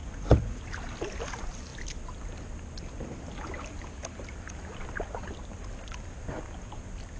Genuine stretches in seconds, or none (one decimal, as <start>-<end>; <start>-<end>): 0.6-7.2